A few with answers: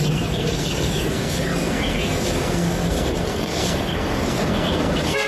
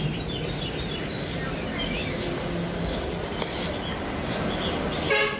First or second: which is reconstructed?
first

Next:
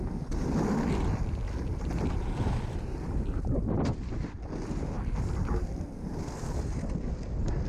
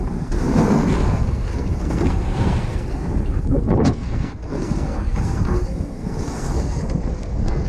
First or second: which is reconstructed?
second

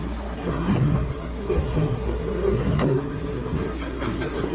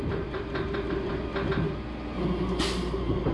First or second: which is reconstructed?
first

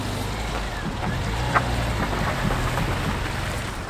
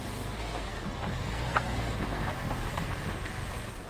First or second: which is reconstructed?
second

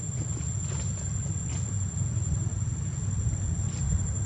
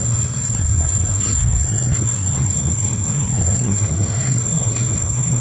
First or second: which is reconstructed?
second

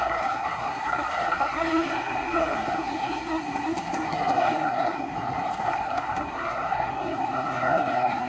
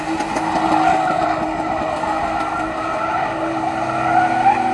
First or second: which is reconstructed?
first